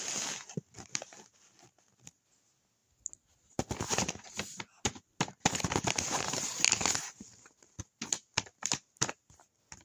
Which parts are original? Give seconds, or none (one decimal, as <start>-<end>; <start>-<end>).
0.0-9.8